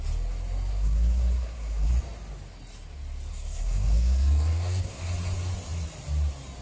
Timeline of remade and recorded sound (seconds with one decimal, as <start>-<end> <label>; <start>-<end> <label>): 0.0-0.7 recorded; 0.7-1.9 remade; 1.9-3.3 recorded; 3.3-5.1 remade; 5.1-6.6 recorded